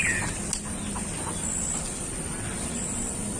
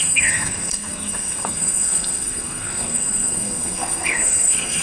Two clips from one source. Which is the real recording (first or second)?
first